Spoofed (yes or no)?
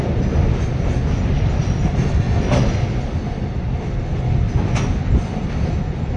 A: no